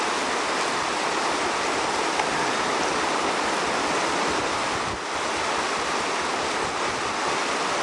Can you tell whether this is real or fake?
real